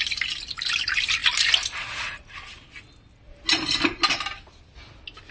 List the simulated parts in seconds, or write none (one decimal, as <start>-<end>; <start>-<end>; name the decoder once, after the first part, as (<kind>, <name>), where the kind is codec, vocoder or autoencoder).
none